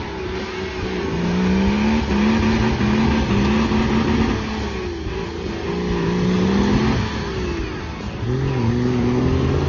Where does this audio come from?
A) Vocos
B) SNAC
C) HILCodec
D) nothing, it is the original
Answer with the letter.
D